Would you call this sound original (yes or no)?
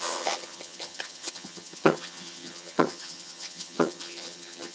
no